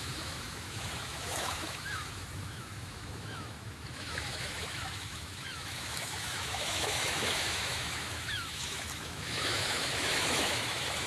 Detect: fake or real fake